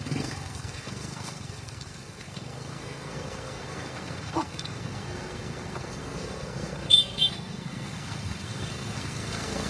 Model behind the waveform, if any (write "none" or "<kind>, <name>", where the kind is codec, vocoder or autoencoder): codec, SNAC